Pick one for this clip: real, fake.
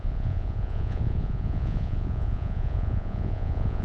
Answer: fake